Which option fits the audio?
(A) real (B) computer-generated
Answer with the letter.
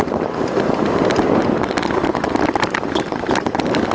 A